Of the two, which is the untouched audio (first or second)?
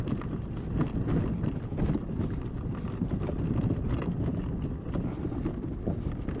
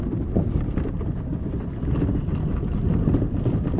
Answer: first